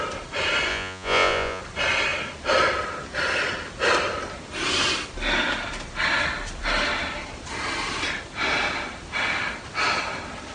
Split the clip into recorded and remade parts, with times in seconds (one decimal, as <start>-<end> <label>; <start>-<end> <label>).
0.0-0.7 recorded; 0.7-1.6 remade; 1.6-10.5 recorded